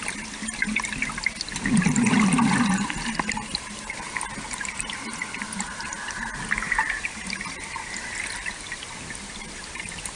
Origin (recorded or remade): recorded